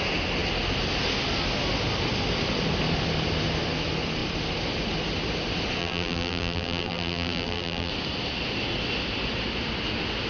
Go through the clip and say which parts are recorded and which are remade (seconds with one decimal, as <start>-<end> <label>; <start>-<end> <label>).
0.0-5.8 recorded; 5.8-7.9 remade; 7.9-10.3 recorded